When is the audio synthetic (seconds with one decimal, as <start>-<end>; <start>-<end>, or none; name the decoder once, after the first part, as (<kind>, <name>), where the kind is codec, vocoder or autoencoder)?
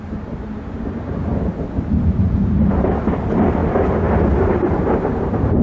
0.0-3.6 (vocoder, BigVGAN v2); 4.4-5.6